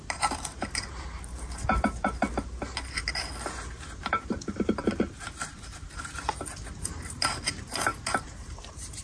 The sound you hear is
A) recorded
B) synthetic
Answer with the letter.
B